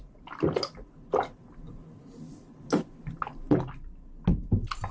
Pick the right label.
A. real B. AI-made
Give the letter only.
A